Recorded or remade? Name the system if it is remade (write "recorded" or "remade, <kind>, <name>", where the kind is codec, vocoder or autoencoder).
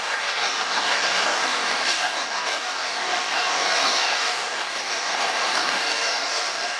remade, codec, DAC